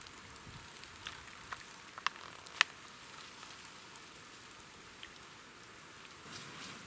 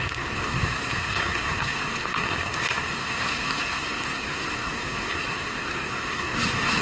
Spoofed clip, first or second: second